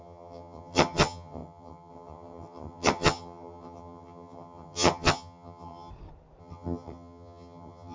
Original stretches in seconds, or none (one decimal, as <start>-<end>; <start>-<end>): 5.9-6.4